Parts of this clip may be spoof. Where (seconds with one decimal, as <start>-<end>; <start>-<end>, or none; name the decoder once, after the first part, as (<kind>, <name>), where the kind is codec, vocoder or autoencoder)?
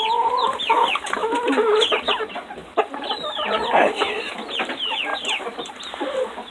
1.2-2.2 (vocoder, BigVGAN v2); 2.6-4.2; 5.1-5.7